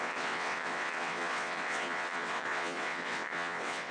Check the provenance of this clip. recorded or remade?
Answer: remade